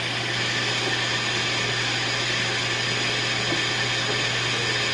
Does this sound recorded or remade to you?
recorded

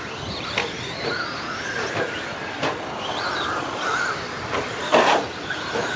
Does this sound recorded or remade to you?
remade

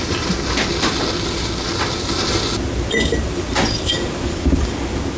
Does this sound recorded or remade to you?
recorded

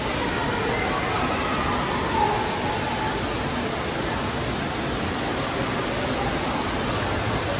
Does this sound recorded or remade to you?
recorded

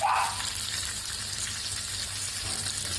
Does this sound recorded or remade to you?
recorded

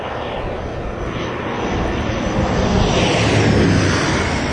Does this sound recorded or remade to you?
recorded